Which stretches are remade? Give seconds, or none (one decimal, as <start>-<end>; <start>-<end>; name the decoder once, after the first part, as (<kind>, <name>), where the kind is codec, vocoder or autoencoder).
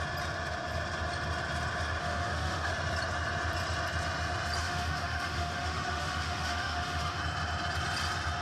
2.0-2.7 (autoencoder, DAC-VAE); 4.6-7.2